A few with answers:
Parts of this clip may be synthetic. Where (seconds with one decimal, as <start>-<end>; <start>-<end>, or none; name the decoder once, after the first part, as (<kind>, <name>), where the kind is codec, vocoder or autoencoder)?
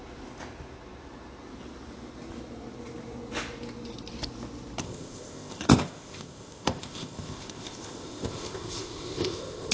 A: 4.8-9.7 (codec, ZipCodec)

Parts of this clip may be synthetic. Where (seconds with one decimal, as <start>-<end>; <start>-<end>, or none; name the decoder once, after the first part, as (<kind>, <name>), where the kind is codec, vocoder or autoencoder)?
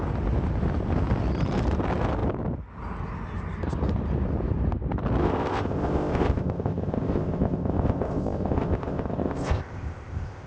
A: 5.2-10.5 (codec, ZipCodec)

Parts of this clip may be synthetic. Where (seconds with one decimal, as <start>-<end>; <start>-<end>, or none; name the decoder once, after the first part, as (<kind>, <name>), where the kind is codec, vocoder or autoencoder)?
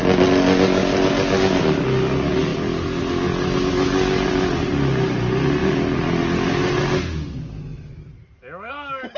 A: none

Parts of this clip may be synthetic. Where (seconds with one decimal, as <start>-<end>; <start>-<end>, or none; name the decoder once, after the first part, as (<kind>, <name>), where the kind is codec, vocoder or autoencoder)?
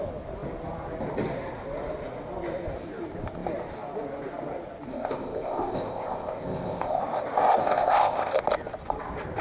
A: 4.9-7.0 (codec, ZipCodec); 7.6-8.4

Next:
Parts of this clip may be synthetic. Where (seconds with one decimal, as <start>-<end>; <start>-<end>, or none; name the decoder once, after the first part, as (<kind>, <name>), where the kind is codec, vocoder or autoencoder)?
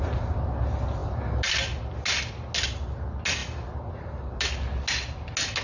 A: none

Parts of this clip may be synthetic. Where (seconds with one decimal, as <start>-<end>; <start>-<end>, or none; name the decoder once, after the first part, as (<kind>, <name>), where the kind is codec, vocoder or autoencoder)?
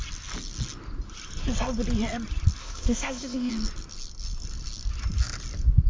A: 2.6-3.5 (codec, ZipCodec)